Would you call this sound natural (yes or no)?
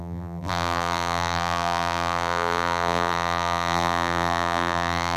no